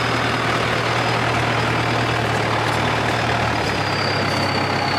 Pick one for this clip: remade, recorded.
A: recorded